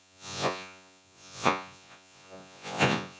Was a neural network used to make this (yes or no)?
yes